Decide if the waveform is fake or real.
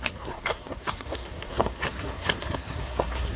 fake